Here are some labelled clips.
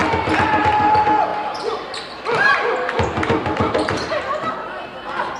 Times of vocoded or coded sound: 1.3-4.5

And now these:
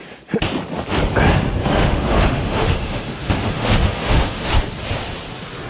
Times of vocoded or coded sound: 1.6-4.5